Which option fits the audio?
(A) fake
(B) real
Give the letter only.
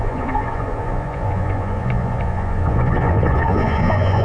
A